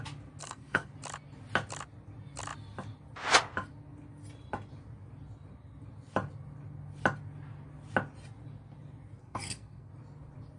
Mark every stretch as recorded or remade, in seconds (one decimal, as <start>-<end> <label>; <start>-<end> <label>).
0.0-0.4 recorded; 0.4-0.9 remade; 0.9-9.2 recorded; 9.2-9.9 remade; 9.9-10.6 recorded